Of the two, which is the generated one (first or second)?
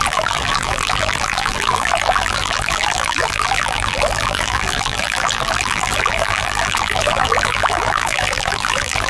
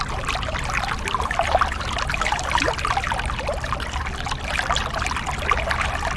first